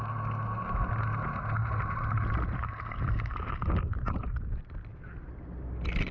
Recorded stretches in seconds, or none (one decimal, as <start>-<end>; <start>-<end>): 0.0-1.6; 3.7-6.1